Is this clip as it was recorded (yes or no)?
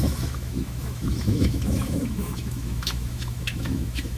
no